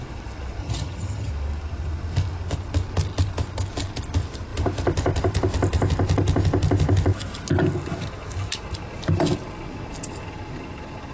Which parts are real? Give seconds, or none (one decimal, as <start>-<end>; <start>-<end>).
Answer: 0.0-0.6; 1.3-11.1

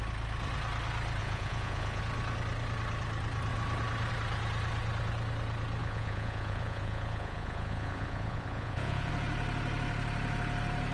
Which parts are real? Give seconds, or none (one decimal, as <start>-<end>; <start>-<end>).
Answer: 0.0-1.2; 2.0-5.8; 9.1-10.9

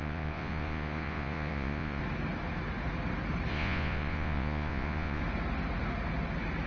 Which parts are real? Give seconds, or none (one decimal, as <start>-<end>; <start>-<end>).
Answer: 2.0-3.5; 5.2-6.7